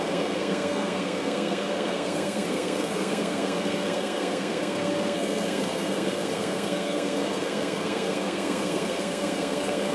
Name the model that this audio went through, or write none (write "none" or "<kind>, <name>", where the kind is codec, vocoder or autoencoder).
codec, SNAC